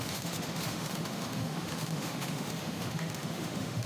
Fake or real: fake